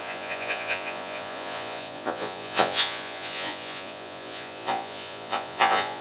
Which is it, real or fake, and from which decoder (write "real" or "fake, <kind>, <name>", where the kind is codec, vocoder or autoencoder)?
fake, vocoder, Vocos